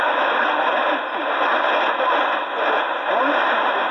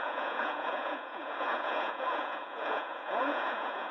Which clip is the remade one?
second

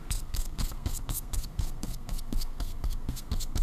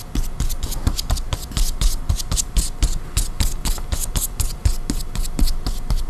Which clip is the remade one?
first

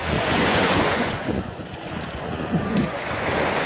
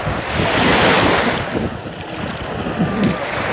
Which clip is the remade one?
first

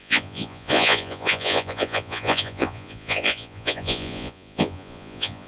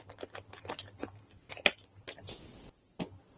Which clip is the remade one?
first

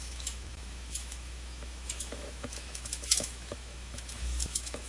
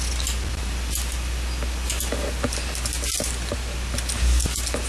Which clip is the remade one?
first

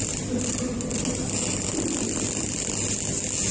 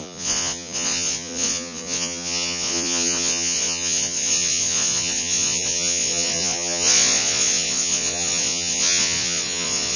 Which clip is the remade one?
second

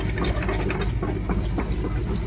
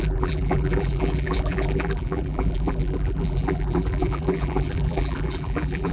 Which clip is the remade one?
second